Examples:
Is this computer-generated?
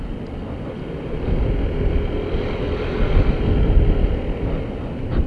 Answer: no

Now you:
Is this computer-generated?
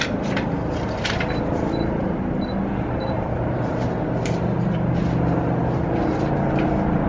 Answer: no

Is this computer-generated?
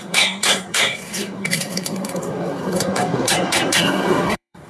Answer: yes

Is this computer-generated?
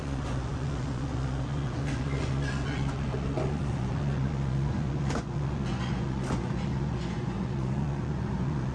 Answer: yes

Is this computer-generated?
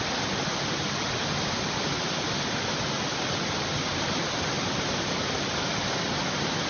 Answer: no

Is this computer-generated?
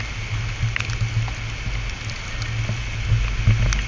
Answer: no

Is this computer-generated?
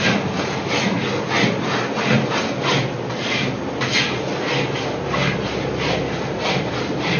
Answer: no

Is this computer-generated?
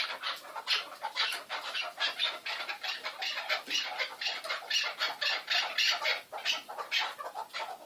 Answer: no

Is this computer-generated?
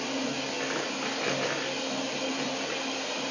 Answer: no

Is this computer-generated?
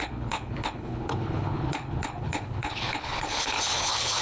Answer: yes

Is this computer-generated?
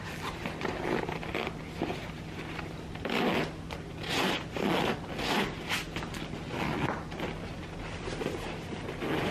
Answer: no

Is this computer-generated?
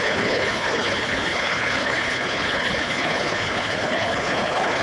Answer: yes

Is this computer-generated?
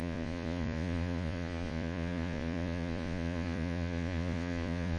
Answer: yes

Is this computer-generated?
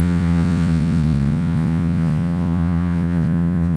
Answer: yes